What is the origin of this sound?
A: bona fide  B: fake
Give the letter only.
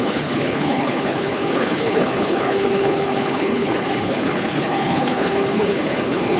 B